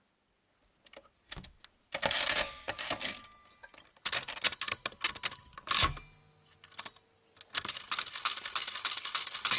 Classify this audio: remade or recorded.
recorded